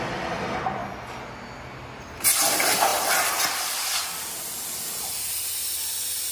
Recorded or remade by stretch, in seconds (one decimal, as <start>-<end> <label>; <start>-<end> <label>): 0.0-6.3 recorded